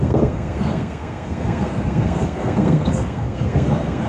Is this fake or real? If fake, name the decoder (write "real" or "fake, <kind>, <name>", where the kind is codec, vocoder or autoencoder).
fake, codec, SNAC